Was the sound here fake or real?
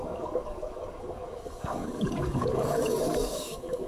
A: fake